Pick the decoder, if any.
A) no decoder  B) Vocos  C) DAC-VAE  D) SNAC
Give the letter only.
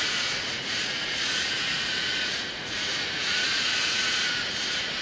B